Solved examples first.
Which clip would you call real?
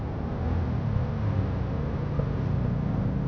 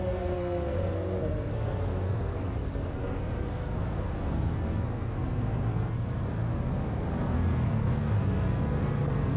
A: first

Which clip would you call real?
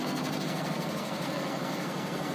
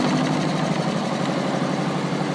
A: second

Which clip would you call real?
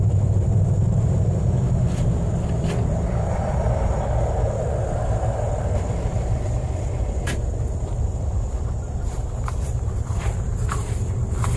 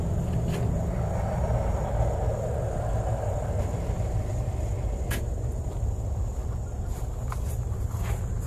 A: second